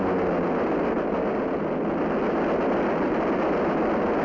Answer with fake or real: real